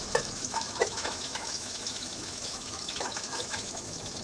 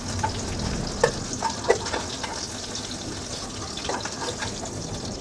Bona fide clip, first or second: second